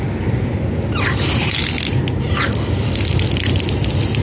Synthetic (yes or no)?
no